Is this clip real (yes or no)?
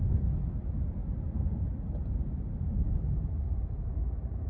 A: yes